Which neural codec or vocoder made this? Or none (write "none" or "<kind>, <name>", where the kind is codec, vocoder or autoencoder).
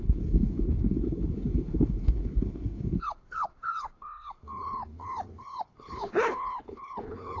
codec, HILCodec